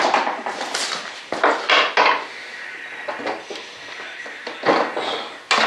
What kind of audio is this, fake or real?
real